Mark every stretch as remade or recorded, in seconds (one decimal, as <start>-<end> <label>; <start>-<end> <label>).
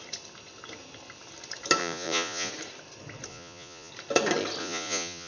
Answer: 0.0-1.8 recorded; 1.8-2.5 remade; 2.5-3.3 recorded; 3.3-3.9 remade; 3.9-4.6 recorded; 4.6-5.3 remade